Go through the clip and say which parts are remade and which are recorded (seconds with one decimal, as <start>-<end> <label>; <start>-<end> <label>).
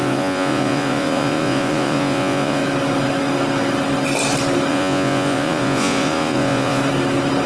0.0-2.6 remade; 2.6-4.7 recorded; 4.7-6.8 remade; 6.8-7.5 recorded